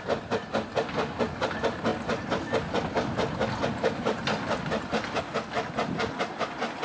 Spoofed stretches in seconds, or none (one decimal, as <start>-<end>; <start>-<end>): none